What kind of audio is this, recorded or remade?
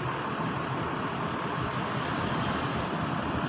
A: recorded